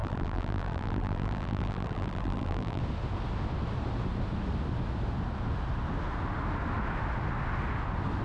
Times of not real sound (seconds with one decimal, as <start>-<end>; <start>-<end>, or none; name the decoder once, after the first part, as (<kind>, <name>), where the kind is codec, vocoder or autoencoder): 0.0-2.8 (vocoder, BigVGAN v2)